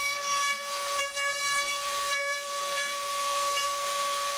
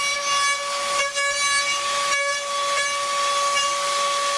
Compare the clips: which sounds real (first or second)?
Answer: second